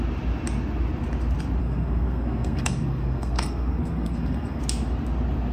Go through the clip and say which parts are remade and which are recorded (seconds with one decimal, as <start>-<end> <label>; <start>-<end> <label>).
0.0-1.6 recorded; 1.6-4.6 remade; 4.6-5.5 recorded